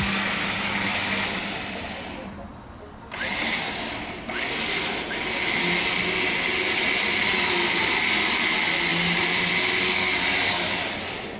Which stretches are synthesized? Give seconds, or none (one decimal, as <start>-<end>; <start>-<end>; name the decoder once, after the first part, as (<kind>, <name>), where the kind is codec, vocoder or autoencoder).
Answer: 8.9-9.5 (vocoder, BigVGAN v2)